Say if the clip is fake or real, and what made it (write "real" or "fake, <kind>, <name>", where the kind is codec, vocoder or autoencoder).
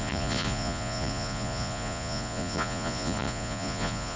fake, vocoder, Vocos